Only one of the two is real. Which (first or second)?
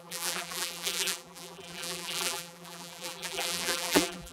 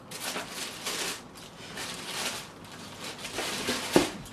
second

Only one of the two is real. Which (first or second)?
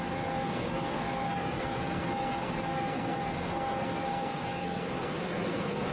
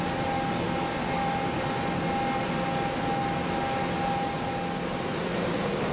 second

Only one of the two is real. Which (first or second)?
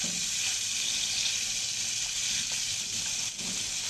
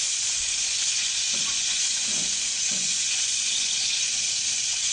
first